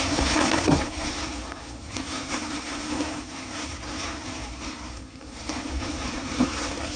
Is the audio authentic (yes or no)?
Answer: no